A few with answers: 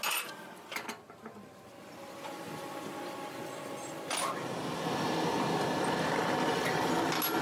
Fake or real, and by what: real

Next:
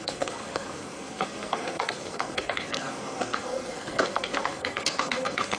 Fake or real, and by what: fake, codec, SNAC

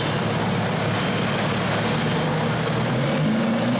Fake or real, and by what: real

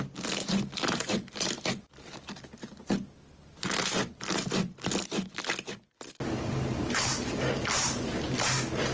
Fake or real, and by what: real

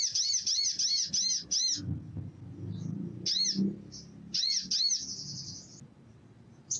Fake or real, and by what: real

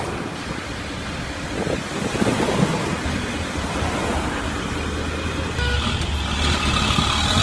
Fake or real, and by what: real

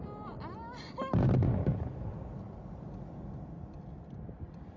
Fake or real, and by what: real